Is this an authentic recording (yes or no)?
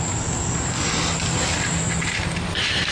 yes